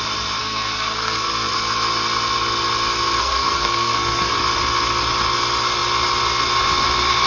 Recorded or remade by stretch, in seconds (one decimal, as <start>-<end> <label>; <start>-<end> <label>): 0.0-0.4 recorded; 0.4-1.5 remade; 1.5-3.2 recorded; 3.2-4.3 remade; 4.3-7.3 recorded